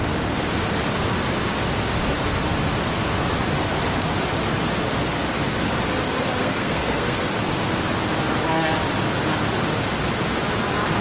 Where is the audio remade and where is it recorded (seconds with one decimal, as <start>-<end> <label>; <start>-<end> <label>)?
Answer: 0.0-6.4 recorded; 6.4-7.3 remade; 7.3-11.0 recorded